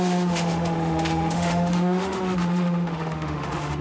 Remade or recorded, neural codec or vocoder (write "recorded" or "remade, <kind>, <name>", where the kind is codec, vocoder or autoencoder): remade, autoencoder, DAC-VAE